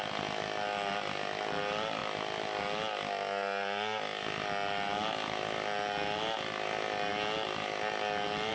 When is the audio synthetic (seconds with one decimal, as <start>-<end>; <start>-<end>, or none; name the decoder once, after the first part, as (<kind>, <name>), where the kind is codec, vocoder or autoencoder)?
none

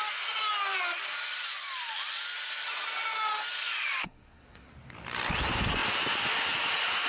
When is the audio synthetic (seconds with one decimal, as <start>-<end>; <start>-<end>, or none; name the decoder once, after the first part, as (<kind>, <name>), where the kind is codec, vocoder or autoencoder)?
4.0-4.7 (codec, SNAC)

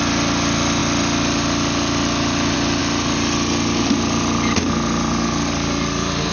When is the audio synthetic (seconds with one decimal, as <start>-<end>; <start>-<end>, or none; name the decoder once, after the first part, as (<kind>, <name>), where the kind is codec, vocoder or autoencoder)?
none

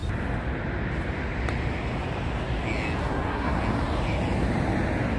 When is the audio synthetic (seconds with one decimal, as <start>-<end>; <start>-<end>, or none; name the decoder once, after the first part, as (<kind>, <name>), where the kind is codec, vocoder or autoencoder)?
3.0-3.6 (codec, SNAC)

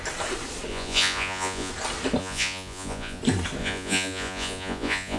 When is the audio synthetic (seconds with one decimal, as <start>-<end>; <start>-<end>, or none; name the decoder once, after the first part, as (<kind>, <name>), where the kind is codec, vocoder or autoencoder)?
0.7-1.7 (vocoder, Vocos); 2.2-3.2; 3.6-5.2

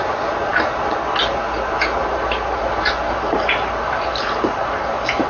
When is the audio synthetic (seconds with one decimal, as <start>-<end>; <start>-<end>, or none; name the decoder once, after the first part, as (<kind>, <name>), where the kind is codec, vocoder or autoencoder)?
2.0-5.3 (vocoder, BigVGAN v2)